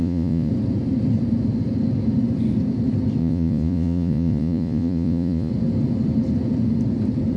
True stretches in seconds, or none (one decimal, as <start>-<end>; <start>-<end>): 0.5-3.2; 5.5-7.4